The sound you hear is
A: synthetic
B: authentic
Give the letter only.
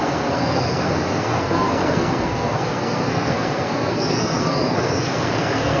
A